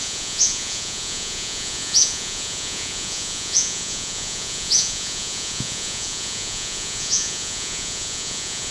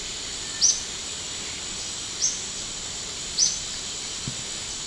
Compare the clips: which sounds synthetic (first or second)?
first